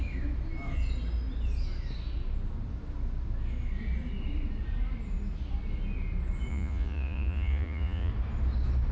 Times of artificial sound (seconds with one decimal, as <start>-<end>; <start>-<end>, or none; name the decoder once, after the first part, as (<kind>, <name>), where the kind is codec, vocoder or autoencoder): 6.5-8.1 (vocoder, Vocos)